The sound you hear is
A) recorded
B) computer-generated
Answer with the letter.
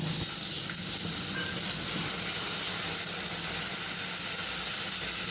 A